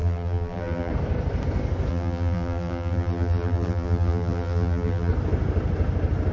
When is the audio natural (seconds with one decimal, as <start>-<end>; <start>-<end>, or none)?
0.9-1.9; 5.1-6.3